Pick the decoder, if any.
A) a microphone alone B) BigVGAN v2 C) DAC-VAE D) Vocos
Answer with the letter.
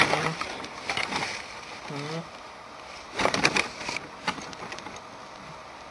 B